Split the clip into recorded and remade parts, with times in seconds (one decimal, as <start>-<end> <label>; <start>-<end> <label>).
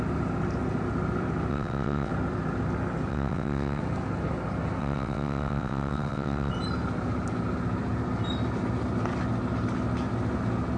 0.0-1.5 recorded; 1.5-2.1 remade; 2.1-3.1 recorded; 3.1-3.8 remade; 3.8-4.8 recorded; 4.8-6.5 remade; 6.5-10.8 recorded